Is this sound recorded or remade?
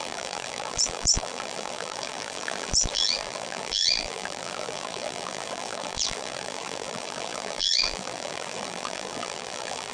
remade